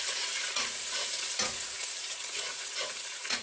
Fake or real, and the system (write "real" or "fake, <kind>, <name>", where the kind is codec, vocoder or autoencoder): fake, vocoder, Vocos